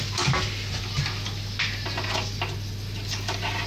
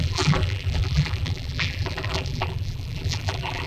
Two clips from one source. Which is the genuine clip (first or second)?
first